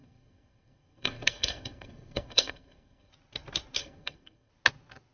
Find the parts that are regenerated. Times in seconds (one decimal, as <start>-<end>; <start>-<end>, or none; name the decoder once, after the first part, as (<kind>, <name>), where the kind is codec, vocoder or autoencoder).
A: 0.0-3.1 (codec, SNAC); 3.8-4.5